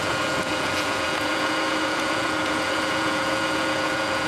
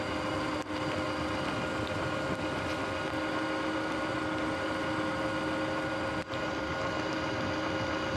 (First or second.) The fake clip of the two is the first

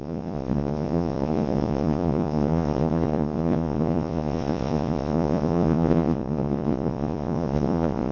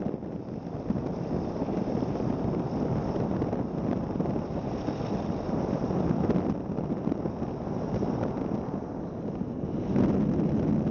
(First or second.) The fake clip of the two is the first